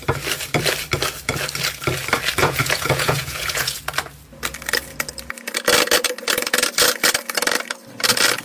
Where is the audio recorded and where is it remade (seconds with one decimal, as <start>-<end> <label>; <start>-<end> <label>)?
0.0-2.4 recorded; 2.4-3.8 remade; 3.8-8.4 recorded